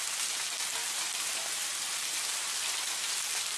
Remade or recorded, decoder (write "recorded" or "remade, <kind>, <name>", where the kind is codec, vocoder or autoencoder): recorded